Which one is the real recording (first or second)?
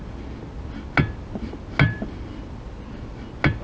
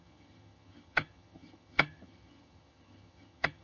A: first